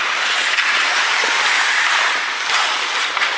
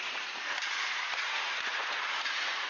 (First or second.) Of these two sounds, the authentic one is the first